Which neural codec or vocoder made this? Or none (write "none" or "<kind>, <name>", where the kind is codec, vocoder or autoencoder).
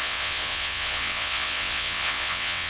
vocoder, WaveNeXt